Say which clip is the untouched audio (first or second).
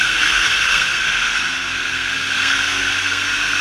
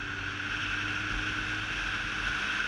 second